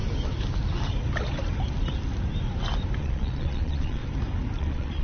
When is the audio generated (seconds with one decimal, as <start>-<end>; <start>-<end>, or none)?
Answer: 3.0-4.0; 4.6-5.0